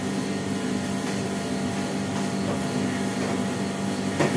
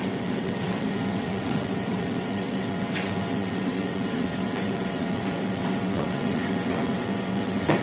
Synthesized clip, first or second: second